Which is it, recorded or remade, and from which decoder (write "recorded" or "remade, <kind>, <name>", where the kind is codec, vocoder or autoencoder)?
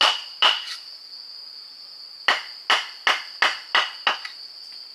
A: recorded